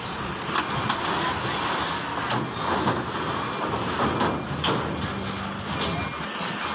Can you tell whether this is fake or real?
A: real